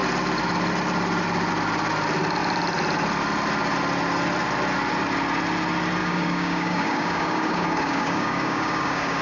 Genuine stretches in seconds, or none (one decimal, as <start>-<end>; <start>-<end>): 0.0-6.0